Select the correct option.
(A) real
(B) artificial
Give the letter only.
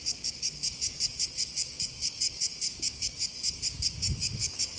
B